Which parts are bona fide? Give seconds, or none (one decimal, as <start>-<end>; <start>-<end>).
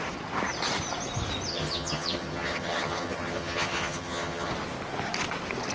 0.0-1.5; 4.5-5.7